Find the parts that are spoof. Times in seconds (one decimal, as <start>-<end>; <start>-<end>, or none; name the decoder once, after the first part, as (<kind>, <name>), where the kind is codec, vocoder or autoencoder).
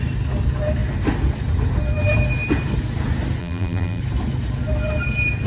3.4-4.0 (vocoder, BigVGAN v2)